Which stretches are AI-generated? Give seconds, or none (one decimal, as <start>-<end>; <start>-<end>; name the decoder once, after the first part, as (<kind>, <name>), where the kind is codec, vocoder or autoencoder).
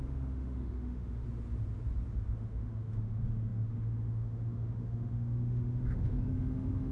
0.0-1.2 (autoencoder, DAC-VAE); 2.1-6.9